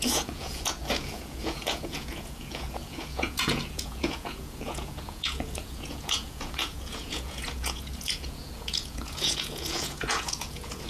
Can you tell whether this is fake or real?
fake